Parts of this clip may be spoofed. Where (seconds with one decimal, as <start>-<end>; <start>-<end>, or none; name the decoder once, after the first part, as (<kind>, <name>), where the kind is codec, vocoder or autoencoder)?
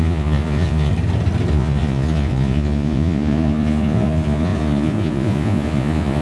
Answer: 0.0-0.9 (vocoder, Vocos); 1.5-6.2